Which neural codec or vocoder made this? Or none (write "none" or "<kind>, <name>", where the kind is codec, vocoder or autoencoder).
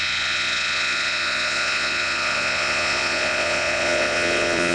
vocoder, Vocos